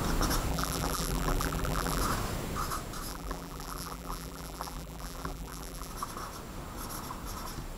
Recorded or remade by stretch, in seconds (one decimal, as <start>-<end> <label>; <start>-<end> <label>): 0.0-0.5 recorded; 0.5-2.0 remade; 2.0-3.1 recorded; 3.1-5.9 remade; 5.9-7.8 recorded